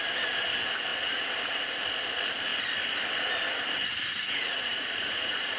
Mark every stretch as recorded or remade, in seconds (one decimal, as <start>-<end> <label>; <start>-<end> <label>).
0.0-3.9 recorded; 3.9-5.6 remade